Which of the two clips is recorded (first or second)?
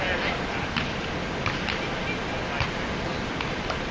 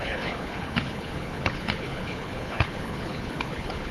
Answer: first